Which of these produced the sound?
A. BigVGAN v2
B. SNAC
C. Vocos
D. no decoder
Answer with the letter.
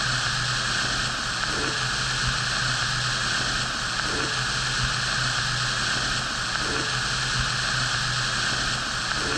D